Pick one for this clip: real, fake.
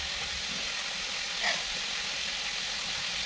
real